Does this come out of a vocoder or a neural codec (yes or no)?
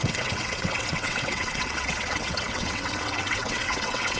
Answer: yes